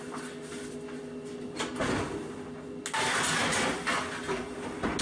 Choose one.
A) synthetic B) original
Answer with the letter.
B